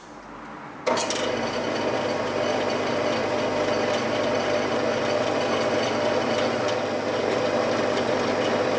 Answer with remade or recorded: recorded